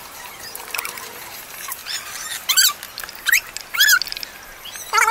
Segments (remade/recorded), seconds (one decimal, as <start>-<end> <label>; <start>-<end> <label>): 0.0-1.8 remade; 1.8-5.1 recorded